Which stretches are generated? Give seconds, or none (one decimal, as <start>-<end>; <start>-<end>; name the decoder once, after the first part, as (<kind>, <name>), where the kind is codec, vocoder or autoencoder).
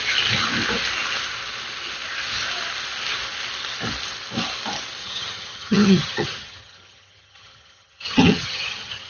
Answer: 5.0-9.1 (vocoder, HiFi-GAN)